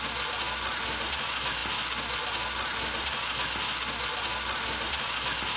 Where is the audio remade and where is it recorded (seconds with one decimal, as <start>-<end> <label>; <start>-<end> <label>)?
0.0-5.6 recorded